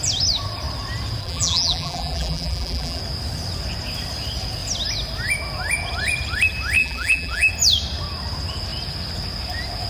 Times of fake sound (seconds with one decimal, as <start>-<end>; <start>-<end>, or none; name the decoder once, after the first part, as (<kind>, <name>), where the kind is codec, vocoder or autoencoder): 1.2-3.0 (vocoder, BigVGAN v2); 6.8-7.5